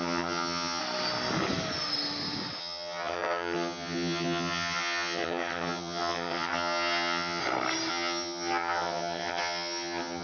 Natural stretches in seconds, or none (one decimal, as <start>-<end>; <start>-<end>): 0.8-2.6; 7.4-7.9